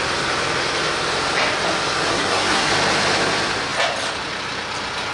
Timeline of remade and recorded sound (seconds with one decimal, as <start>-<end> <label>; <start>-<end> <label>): 0.0-2.1 recorded; 2.1-2.7 remade; 2.7-5.1 recorded

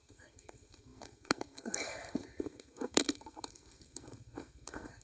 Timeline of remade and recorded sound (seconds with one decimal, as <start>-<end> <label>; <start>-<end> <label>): 0.0-5.0 remade

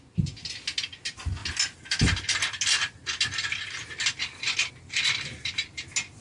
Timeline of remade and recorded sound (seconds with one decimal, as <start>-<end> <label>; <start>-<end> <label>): 0.0-6.2 recorded

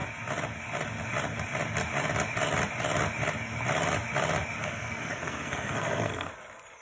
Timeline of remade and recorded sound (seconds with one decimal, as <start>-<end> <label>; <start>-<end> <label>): 0.0-4.6 recorded; 4.6-6.3 remade; 6.3-6.8 recorded

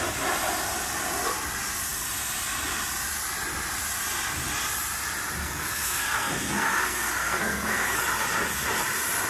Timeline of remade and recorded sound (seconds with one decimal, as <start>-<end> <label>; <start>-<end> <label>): 0.0-5.4 recorded; 5.4-8.0 remade; 8.0-9.3 recorded

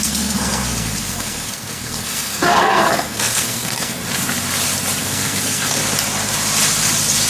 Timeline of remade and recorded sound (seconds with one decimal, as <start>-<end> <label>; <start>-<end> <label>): 0.0-4.0 remade; 4.0-5.0 recorded; 5.0-5.8 remade; 5.8-7.3 recorded